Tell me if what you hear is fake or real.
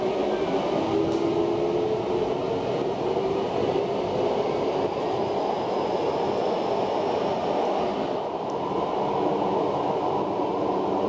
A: real